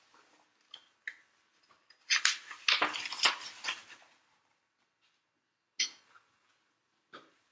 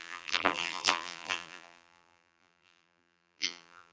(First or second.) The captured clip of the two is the first